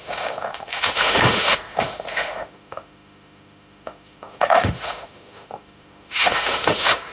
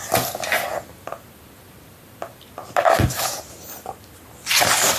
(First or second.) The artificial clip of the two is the first